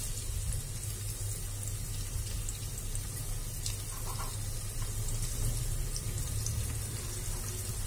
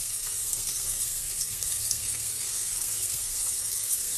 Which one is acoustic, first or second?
first